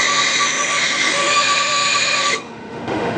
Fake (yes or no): yes